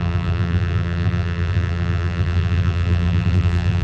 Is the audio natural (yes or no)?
no